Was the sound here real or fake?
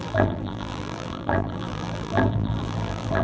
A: fake